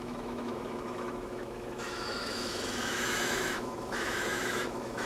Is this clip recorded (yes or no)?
no